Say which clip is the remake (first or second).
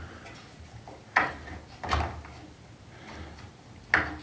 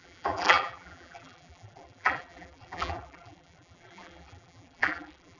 second